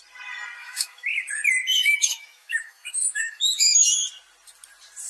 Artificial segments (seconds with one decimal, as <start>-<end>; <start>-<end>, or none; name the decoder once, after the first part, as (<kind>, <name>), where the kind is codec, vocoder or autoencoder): 0.6-1.2 (autoencoder, DAC-VAE); 1.6-3.9